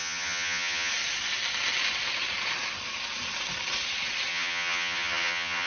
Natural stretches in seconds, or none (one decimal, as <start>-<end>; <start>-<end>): 0.9-4.3